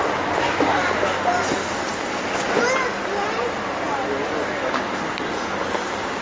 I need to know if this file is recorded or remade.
recorded